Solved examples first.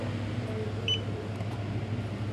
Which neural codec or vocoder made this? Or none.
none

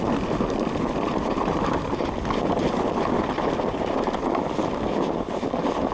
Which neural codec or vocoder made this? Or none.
none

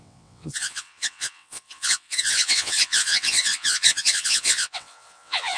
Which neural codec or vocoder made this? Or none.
vocoder, WaveNeXt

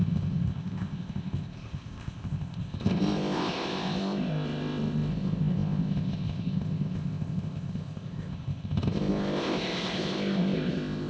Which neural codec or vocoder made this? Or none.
codec, ZipCodec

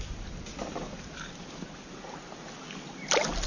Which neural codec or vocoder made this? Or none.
none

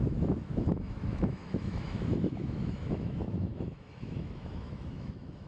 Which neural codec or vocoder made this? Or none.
autoencoder, DAC-VAE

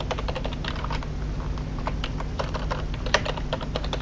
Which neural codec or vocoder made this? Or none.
vocoder, BigVGAN v2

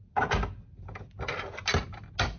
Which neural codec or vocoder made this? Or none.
none